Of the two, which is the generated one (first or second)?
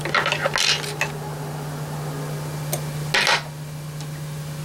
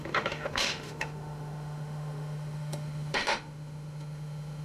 second